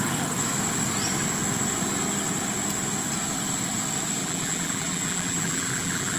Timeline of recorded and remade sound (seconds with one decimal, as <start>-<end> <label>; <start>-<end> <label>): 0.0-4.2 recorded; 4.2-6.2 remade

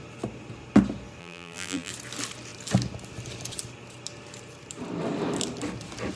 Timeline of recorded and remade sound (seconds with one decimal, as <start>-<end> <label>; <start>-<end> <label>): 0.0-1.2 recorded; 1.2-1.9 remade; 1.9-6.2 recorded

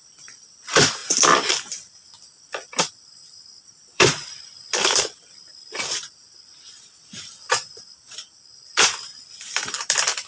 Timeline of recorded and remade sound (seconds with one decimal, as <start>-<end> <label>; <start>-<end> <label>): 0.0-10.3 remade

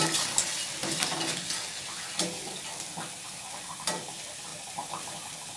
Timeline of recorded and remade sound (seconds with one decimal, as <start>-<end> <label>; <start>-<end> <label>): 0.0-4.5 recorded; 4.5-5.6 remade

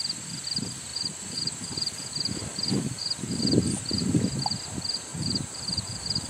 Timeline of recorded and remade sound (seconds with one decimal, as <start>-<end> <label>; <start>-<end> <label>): 0.0-0.9 recorded; 0.9-4.2 remade; 4.2-5.1 recorded; 5.1-6.3 remade

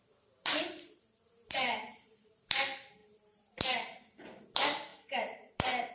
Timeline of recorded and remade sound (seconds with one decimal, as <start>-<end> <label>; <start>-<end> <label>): 0.0-5.9 remade